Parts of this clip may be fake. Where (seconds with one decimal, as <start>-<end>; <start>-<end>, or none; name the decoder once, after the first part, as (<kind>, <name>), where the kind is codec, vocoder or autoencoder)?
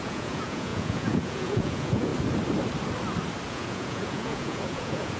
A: 0.0-2.1 (vocoder, Vocos); 3.5-5.2